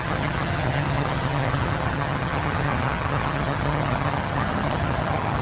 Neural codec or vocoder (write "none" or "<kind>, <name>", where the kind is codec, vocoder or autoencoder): vocoder, HiFi-GAN